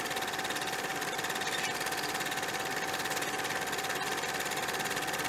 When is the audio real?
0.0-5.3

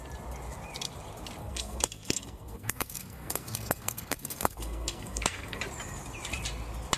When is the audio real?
0.0-1.4; 5.6-7.0

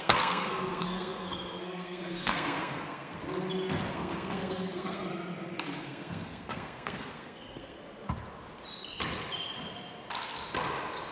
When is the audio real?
3.2-3.9; 5.1-5.8; 7.8-11.1